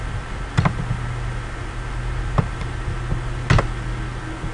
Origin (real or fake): real